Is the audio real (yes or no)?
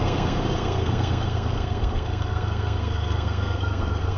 no